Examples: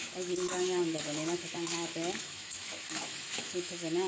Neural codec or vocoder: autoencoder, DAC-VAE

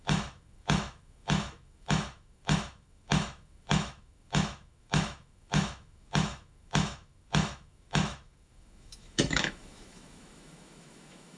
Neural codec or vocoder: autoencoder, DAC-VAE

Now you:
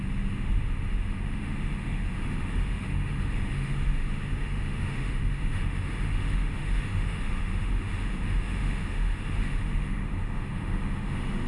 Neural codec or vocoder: autoencoder, DAC-VAE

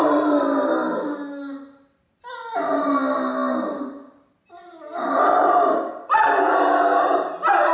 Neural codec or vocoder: none